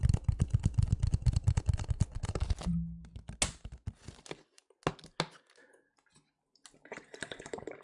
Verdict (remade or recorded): recorded